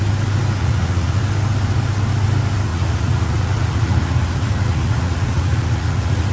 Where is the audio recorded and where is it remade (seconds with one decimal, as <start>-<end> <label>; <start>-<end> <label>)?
0.0-0.6 recorded; 0.6-1.2 remade; 1.2-2.7 recorded; 2.7-6.3 remade